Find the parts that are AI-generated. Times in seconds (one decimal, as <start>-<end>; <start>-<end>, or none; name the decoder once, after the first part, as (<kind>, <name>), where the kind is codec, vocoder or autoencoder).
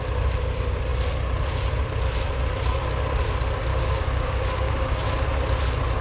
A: 3.7-5.0 (codec, DAC)